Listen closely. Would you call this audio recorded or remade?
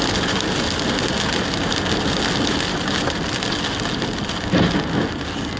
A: recorded